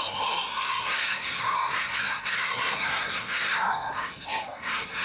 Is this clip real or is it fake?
fake